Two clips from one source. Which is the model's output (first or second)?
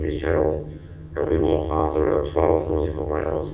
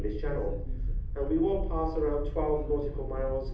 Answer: first